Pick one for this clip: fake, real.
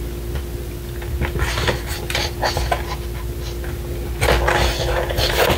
real